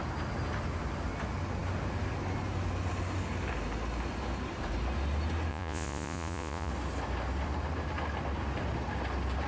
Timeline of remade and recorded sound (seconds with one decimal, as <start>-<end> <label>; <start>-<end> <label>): 0.0-5.5 recorded; 5.5-6.7 remade; 6.7-9.5 recorded